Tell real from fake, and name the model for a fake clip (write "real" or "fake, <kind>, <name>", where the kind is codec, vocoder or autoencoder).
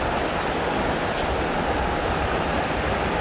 real